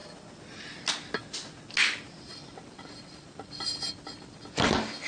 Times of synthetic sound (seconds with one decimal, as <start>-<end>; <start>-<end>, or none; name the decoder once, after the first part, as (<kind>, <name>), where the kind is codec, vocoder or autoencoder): 2.3-3.8 (vocoder, BigVGAN v2)